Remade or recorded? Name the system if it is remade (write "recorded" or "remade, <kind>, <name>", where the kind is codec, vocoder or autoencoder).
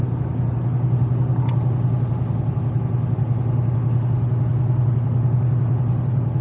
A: recorded